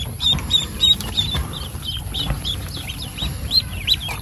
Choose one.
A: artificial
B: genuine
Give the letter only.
A